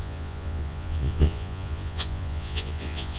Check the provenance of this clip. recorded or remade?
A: remade